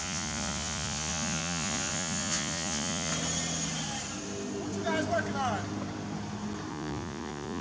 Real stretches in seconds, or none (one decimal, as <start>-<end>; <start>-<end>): 3.1-6.7

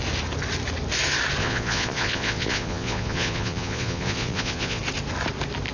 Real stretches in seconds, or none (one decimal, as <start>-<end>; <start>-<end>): 0.0-1.4; 4.8-5.7

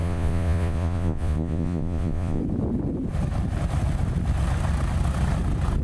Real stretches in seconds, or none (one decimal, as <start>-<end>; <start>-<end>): 2.4-5.8

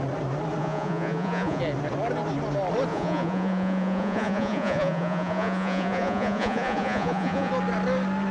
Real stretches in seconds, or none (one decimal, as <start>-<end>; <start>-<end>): 0.0-0.6; 1.6-2.9; 7.5-8.3

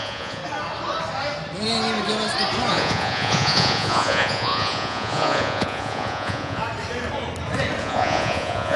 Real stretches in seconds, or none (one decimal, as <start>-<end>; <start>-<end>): 0.4-2.7; 6.6-7.8